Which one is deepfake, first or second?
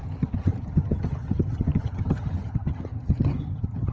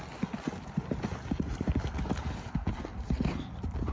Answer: first